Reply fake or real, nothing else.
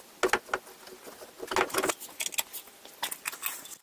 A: real